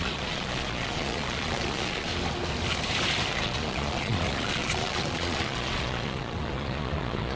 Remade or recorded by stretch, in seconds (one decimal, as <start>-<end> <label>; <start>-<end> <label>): 0.0-2.1 remade; 2.1-3.3 recorded; 3.3-7.4 remade